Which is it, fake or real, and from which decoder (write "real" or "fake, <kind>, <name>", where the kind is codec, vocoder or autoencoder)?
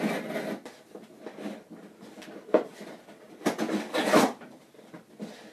real